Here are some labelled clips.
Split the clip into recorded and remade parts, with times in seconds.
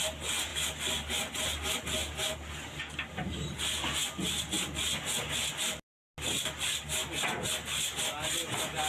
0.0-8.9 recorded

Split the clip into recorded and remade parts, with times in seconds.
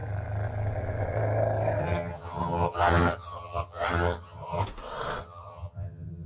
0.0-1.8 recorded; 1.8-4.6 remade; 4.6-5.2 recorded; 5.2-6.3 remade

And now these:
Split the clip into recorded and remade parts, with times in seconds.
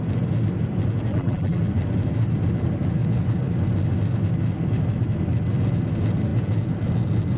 0.0-1.1 recorded; 1.1-1.6 remade; 1.6-7.4 recorded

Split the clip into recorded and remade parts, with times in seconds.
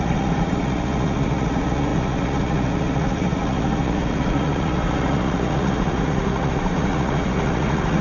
0.0-8.0 remade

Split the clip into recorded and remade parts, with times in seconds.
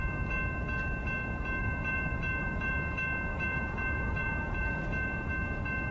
0.0-1.6 recorded; 1.6-2.7 remade; 2.7-3.3 recorded; 3.3-5.3 remade; 5.3-5.9 recorded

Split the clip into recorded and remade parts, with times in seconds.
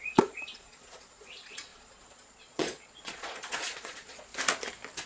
0.0-4.3 remade; 4.3-5.1 recorded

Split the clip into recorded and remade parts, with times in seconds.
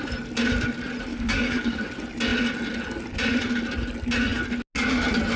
0.0-1.1 recorded; 1.1-1.9 remade; 1.9-5.4 recorded